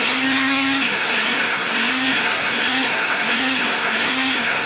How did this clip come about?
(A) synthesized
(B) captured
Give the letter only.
A